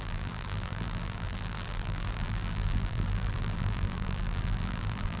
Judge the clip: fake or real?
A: fake